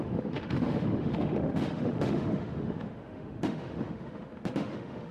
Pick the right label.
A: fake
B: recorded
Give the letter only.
A